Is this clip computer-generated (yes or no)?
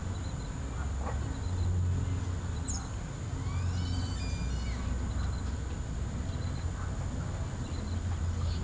no